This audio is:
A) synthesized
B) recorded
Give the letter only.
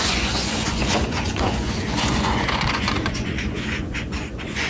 A